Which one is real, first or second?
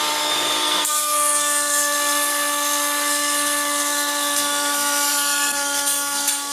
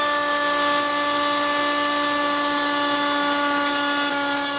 second